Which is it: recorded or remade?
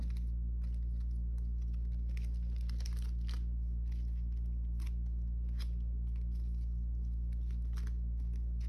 recorded